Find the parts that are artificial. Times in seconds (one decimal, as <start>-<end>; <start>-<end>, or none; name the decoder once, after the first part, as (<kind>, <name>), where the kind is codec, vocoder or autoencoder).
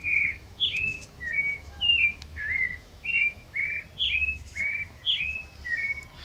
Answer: 0.0-3.7 (autoencoder, DAC-VAE); 4.2-5.0